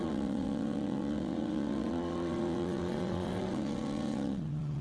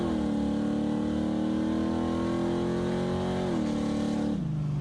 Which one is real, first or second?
second